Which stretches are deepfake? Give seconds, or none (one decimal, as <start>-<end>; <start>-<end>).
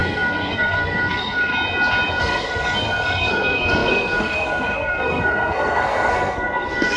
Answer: 0.0-1.5; 2.2-7.0